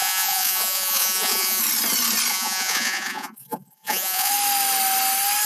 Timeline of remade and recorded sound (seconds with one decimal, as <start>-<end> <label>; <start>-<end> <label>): 0.0-1.6 remade; 1.6-2.3 recorded; 2.3-4.3 remade; 4.3-5.5 recorded